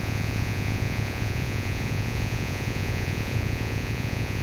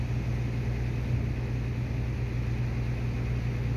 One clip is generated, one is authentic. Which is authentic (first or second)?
second